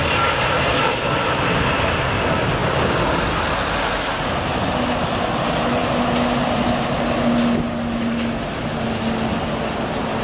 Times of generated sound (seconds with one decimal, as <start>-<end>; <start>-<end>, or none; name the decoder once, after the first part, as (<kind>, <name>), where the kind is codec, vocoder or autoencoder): none